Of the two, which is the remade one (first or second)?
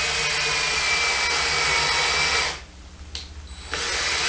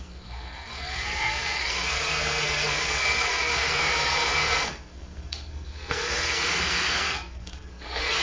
second